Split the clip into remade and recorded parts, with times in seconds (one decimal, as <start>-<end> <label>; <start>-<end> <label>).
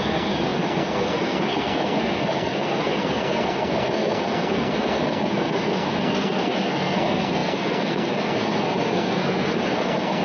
0.0-10.2 remade